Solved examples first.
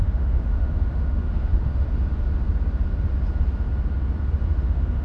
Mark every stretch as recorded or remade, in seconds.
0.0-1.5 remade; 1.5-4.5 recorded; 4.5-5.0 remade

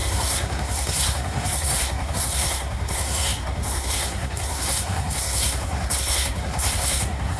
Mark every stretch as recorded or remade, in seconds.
0.0-7.4 remade

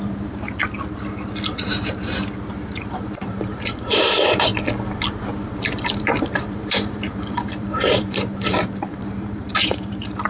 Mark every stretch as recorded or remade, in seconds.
0.0-0.6 remade; 0.6-1.5 recorded; 1.5-4.5 remade; 4.5-5.3 recorded; 5.3-10.3 remade